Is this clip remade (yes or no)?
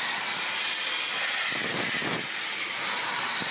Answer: no